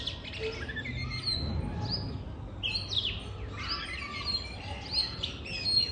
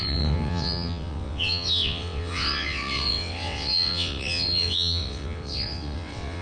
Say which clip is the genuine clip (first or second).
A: first